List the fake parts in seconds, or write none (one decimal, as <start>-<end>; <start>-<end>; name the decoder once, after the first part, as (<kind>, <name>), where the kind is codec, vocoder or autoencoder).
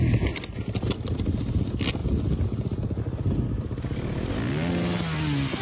none